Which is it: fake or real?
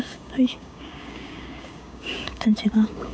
fake